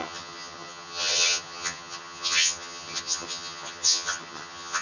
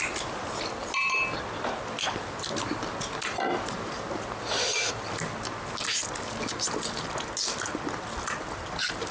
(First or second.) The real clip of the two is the second